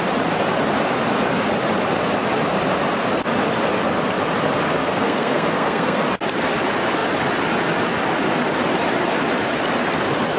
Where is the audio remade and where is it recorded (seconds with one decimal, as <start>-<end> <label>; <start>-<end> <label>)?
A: 0.0-4.8 recorded; 4.8-6.0 remade; 6.0-10.4 recorded